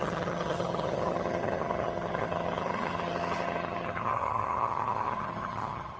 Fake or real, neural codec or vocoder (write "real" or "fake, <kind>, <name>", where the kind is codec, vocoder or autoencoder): fake, vocoder, HiFi-GAN